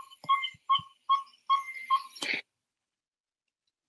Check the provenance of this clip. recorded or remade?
recorded